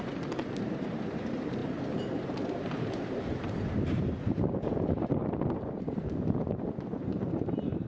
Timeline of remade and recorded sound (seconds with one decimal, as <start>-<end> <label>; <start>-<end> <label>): 0.0-7.9 remade